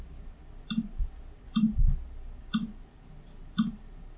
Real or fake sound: real